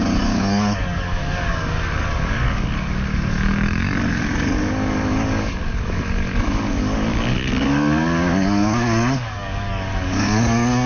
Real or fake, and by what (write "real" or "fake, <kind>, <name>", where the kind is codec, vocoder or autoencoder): fake, codec, DAC